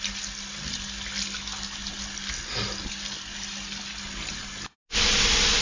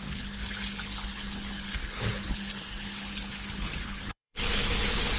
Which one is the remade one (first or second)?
second